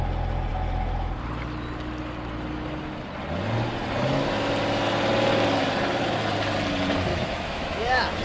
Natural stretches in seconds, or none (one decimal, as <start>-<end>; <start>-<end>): 0.0-7.1